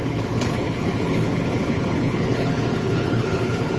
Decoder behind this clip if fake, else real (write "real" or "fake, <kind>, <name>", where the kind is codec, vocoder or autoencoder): fake, codec, HILCodec